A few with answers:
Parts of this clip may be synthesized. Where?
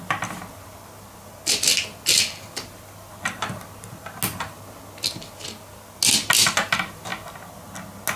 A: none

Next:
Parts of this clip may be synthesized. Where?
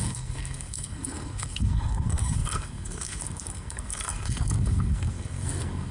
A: 0.0-5.9 (codec, SNAC)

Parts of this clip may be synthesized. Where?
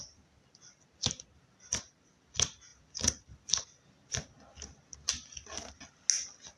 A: none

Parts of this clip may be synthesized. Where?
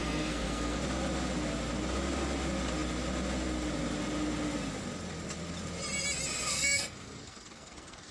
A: 0.0-0.8 (codec, SNAC); 6.5-8.1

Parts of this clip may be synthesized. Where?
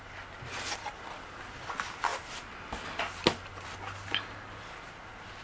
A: none